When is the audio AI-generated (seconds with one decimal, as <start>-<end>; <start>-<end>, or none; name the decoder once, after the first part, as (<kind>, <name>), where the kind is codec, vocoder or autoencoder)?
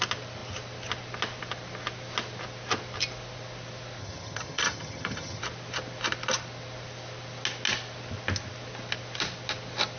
4.0-5.4 (vocoder, HiFi-GAN)